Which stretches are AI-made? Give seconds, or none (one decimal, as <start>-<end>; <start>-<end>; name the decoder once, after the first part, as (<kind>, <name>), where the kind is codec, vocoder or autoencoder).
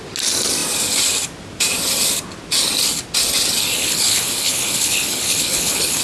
3.8-6.0 (codec, HILCodec)